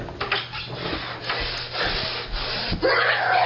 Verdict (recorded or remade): recorded